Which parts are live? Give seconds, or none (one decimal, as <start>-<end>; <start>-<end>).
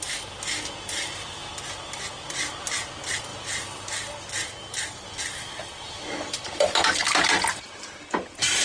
0.0-8.6